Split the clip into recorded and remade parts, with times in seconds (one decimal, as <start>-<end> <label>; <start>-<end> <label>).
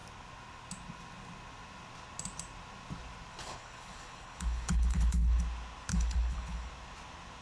0.0-3.3 recorded; 3.3-5.4 remade; 5.4-5.9 recorded; 5.9-6.7 remade; 6.7-7.4 recorded